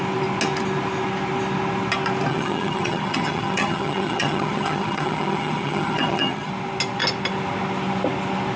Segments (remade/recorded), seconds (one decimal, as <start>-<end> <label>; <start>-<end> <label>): 0.0-2.3 recorded; 2.3-6.5 remade; 6.5-8.6 recorded